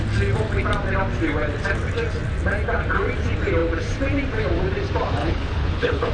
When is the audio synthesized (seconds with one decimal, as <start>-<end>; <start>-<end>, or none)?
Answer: 5.2-6.1